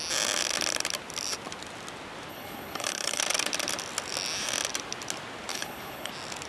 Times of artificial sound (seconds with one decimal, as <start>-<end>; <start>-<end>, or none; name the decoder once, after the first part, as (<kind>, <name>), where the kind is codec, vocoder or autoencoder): 2.3-3.2 (codec, HILCodec); 5.5-6.1